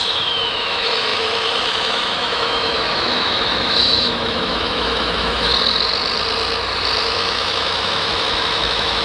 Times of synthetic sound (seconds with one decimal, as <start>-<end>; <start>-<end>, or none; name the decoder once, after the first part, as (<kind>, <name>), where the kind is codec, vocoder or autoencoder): 0.0-5.5 (autoencoder, DAC-VAE); 7.0-9.0